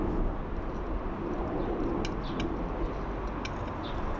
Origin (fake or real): real